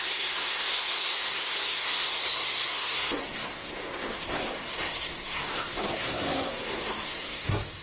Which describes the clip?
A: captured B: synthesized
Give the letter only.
B